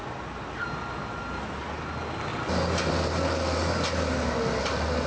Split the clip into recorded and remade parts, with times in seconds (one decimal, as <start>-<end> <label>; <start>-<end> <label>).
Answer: 0.0-5.1 recorded